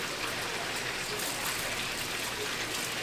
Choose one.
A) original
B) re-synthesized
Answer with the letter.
A